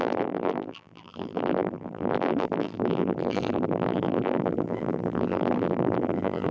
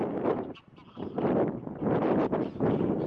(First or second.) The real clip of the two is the second